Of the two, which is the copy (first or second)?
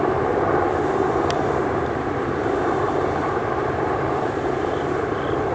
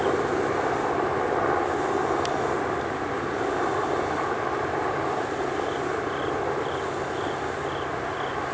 first